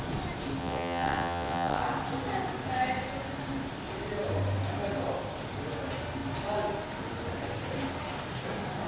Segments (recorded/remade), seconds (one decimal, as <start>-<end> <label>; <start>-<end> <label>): 0.0-0.6 recorded; 0.6-1.8 remade; 1.8-8.9 recorded